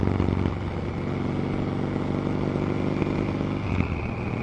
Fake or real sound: real